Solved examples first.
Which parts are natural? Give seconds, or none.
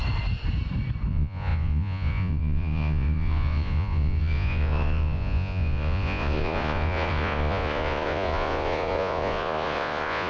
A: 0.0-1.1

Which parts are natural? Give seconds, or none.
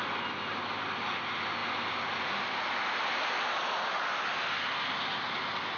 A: 0.0-5.8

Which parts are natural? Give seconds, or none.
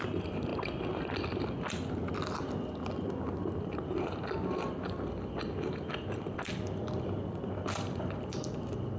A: 0.5-2.9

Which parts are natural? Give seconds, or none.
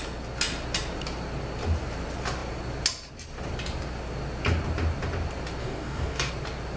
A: 0.0-5.6; 6.3-6.8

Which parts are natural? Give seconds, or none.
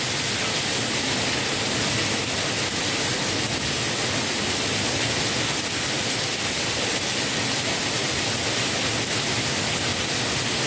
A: 0.0-10.7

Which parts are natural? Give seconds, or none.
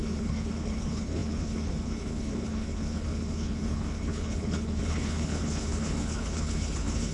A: none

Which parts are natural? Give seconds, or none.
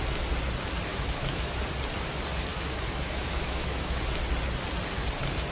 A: 0.0-0.9; 1.6-2.5; 4.0-5.5